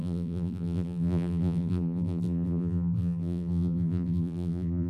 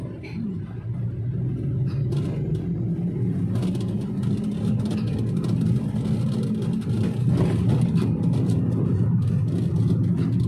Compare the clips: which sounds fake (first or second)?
first